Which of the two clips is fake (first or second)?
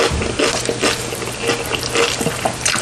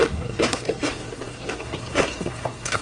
second